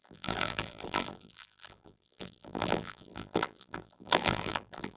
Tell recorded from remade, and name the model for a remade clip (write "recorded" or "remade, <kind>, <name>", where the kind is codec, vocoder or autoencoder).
remade, vocoder, BigVGAN v2